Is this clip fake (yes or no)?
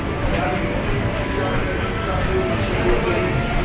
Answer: no